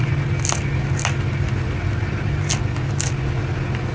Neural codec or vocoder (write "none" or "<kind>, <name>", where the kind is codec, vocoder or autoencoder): none